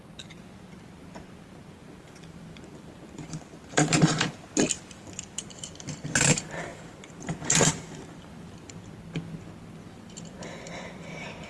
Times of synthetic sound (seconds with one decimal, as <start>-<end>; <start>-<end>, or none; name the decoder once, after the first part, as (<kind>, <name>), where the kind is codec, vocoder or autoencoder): 1.8-4.6 (vocoder, BigVGAN v2); 6.7-8.7